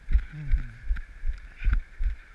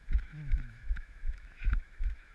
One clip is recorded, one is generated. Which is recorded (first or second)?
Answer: first